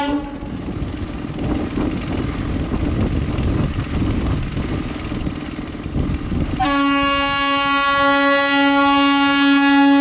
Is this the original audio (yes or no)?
yes